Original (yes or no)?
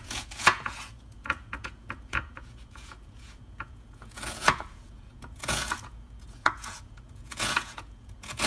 no